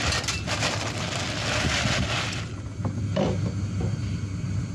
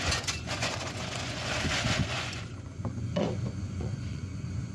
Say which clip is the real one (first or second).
first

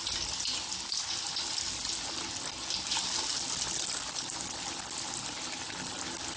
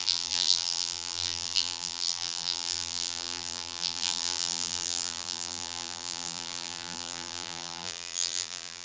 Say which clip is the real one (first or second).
first